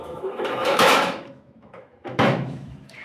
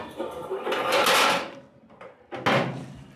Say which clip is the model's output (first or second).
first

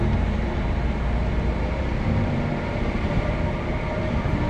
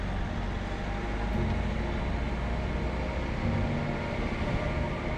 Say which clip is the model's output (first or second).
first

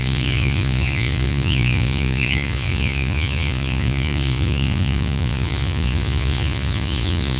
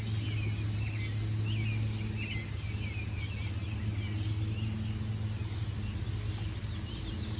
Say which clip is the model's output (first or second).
first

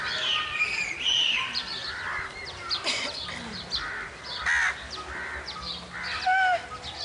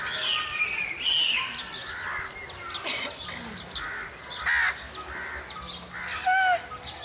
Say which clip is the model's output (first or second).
first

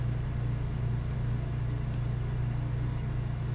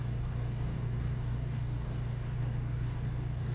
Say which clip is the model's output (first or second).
second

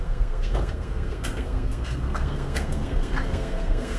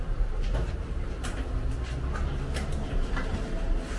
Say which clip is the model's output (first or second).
first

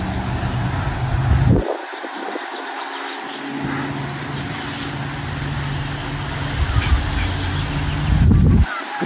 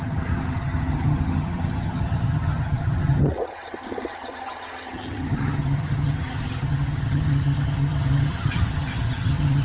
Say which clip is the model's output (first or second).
second